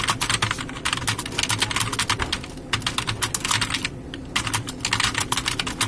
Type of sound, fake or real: real